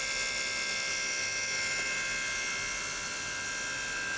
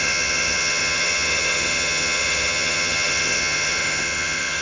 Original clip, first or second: first